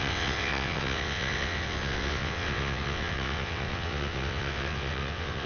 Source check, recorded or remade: remade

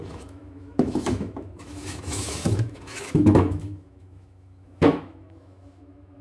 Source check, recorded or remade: remade